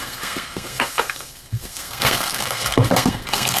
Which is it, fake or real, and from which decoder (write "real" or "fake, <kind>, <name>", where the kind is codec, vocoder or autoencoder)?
fake, codec, SNAC